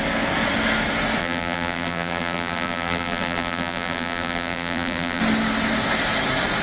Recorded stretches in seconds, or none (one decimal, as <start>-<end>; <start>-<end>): 0.0-1.2; 5.2-6.6